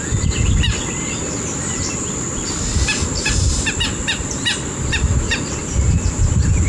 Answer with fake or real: fake